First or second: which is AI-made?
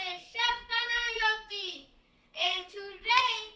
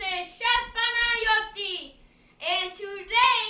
first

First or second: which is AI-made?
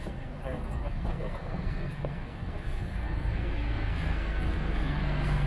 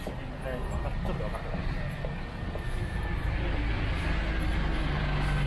first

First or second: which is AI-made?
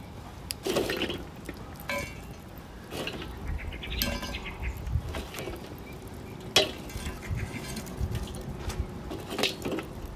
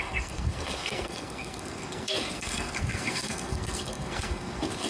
second